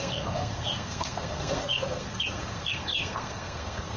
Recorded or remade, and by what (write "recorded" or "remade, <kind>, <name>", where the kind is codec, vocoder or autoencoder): remade, codec, SNAC